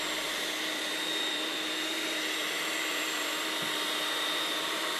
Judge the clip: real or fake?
fake